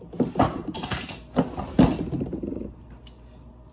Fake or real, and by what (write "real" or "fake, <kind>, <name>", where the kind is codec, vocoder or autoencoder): real